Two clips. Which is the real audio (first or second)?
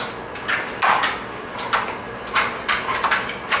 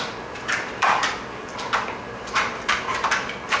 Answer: first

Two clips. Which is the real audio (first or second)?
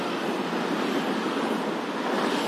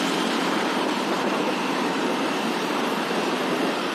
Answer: first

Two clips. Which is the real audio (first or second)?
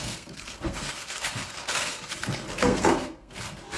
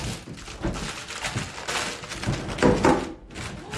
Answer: second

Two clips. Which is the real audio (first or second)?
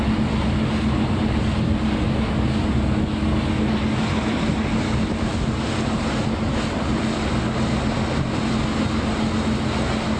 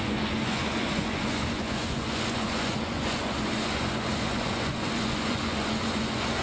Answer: first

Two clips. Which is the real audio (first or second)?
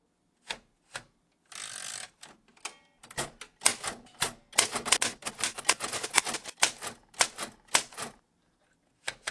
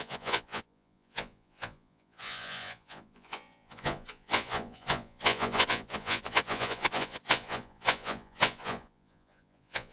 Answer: first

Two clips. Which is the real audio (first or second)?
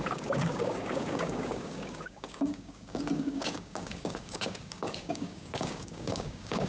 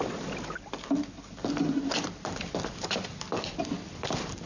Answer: second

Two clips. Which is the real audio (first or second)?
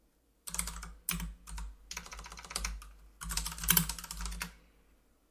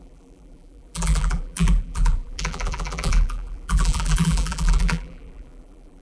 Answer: first